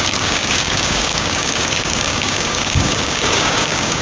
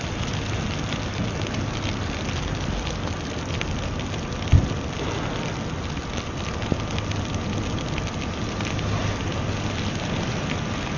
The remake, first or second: first